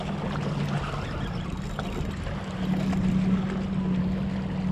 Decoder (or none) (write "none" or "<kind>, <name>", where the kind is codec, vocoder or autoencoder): none